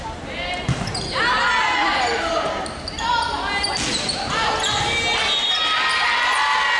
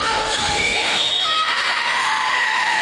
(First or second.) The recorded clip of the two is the first